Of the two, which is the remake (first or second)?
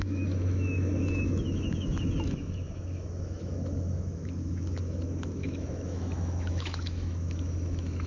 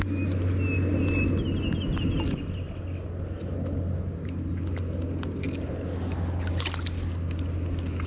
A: first